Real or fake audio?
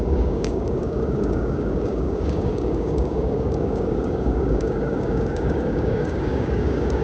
fake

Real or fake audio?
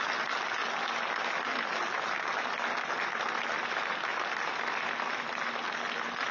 real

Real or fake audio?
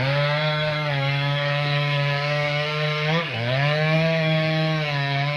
fake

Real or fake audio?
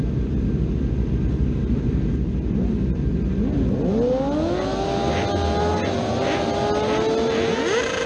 real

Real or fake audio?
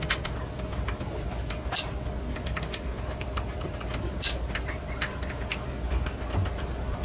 real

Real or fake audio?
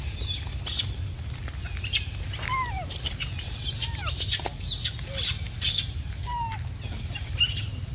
real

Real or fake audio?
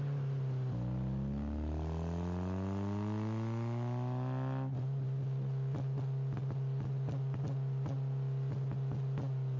real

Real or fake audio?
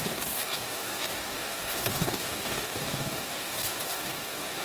fake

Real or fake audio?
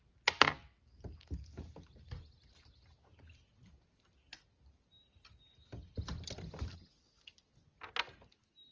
real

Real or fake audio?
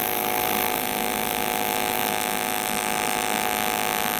real